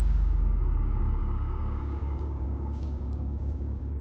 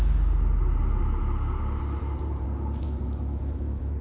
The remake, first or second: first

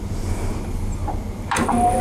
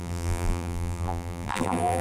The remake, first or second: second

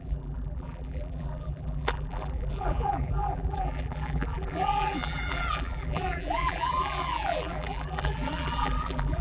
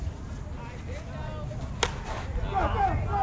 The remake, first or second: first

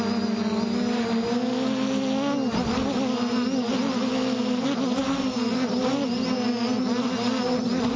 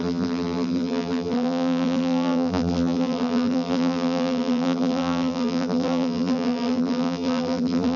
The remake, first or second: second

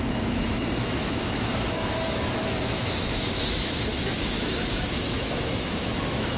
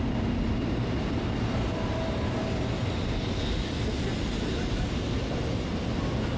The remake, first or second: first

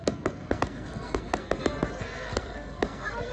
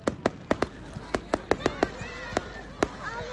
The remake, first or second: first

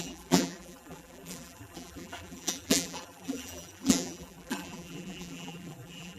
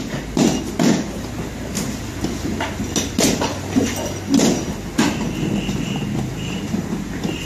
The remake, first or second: first